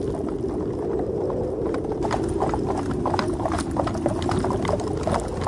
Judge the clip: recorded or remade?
recorded